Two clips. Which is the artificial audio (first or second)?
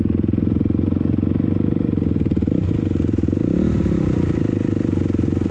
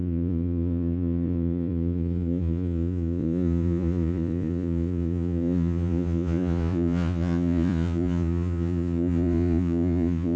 second